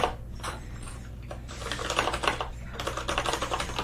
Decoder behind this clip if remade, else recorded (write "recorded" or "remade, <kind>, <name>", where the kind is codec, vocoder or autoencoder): remade, vocoder, BigVGAN v2